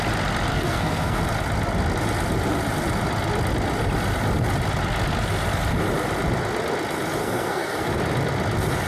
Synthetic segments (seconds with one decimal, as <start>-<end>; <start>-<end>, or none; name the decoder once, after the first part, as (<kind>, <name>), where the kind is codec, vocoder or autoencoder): 0.5-1.2 (codec, SNAC); 7.2-7.9